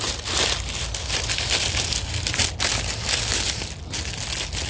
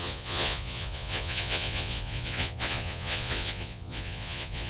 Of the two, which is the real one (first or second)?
first